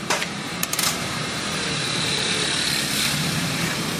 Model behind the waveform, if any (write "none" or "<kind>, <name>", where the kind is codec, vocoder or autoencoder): vocoder, BigVGAN v2